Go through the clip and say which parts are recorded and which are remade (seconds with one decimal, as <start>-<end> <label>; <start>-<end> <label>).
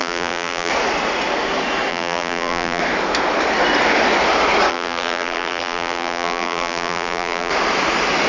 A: 0.0-0.7 remade; 0.7-1.9 recorded; 1.9-2.8 remade; 2.8-4.7 recorded; 4.7-7.5 remade; 7.5-8.3 recorded